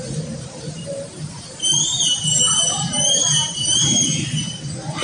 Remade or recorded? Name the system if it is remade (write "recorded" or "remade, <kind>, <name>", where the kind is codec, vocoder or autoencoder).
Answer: remade, vocoder, BigVGAN v2